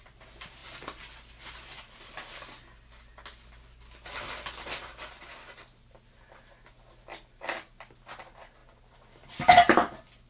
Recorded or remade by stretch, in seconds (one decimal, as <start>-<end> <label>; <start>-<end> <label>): 0.0-10.3 recorded